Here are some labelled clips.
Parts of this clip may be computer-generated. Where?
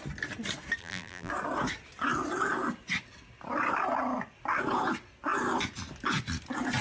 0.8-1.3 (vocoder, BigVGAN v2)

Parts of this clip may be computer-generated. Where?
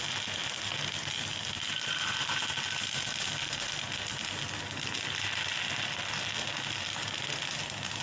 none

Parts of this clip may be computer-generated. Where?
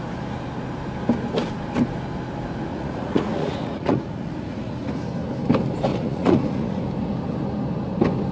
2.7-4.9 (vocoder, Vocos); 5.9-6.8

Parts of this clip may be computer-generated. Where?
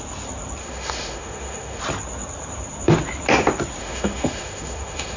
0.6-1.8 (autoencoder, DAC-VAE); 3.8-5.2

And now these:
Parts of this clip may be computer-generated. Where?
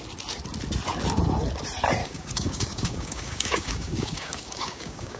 2.0-5.2 (codec, DAC)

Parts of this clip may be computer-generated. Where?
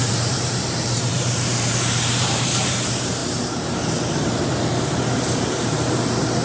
0.0-3.2 (vocoder, BigVGAN v2); 5.2-6.4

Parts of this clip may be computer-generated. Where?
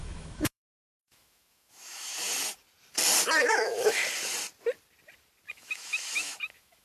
0.0-2.1 (autoencoder, DAC-VAE); 3.4-4.0; 5.5-6.8